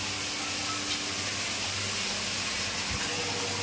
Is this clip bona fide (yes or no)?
yes